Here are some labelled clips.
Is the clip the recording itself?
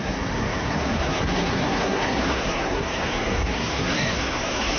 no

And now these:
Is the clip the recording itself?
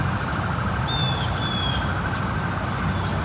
yes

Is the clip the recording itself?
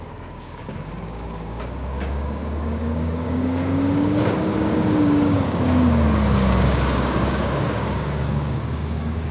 no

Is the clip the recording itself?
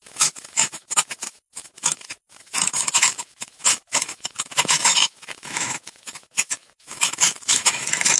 no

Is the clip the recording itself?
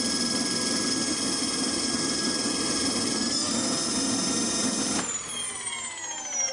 yes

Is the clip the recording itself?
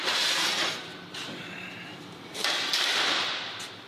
no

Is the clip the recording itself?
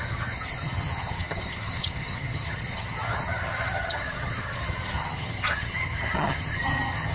no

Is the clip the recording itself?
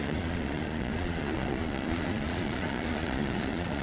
no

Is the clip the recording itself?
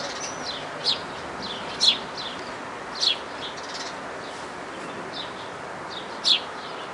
yes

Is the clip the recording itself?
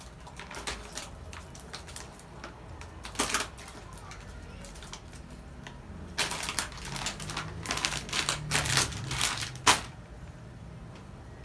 yes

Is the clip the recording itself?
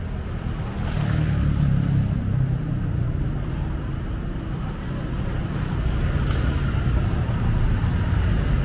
yes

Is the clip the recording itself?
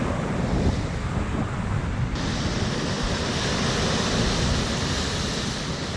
yes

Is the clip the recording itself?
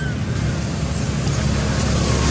yes